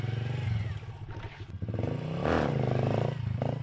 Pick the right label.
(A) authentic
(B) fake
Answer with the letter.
A